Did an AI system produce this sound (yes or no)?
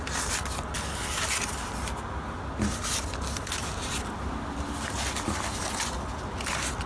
no